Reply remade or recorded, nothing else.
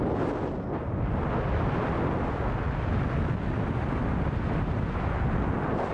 recorded